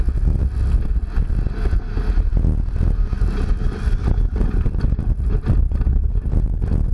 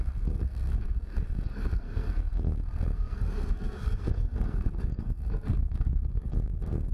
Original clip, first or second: first